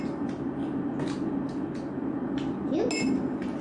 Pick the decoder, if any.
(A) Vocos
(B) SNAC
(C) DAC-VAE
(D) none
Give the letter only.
D